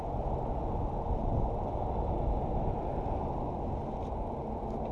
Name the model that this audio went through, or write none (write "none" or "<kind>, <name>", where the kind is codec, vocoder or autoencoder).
none